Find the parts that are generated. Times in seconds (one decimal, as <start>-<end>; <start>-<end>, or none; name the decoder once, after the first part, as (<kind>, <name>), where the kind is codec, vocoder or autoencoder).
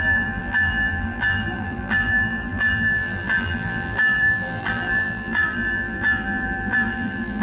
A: 0.0-7.4 (vocoder, BigVGAN v2)